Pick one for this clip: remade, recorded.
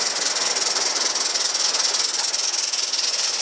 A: recorded